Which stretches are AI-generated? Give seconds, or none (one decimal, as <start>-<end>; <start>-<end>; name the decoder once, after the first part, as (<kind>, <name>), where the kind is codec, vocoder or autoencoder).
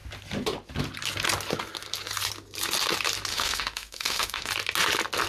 3.3-4.5 (autoencoder, DAC-VAE)